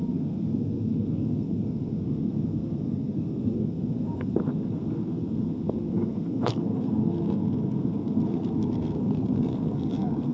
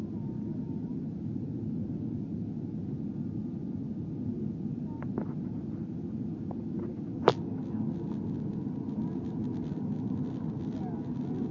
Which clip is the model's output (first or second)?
first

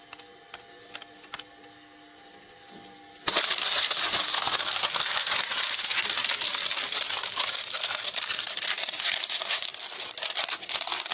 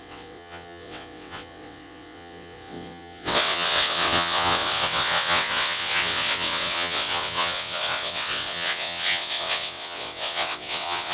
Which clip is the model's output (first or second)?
second